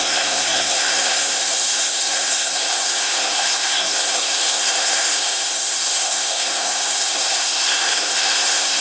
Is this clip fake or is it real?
fake